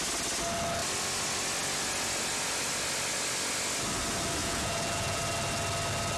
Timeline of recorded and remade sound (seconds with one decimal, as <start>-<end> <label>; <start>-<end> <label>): 0.0-4.4 recorded; 4.4-5.2 remade; 5.2-6.2 recorded